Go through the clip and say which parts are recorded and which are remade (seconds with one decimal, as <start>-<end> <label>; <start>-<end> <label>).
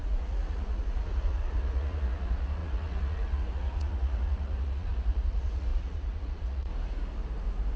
0.0-6.7 remade; 6.7-7.8 recorded